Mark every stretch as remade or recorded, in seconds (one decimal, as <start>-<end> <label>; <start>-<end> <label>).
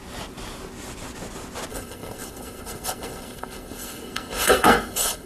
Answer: 0.0-1.7 recorded; 1.7-5.3 remade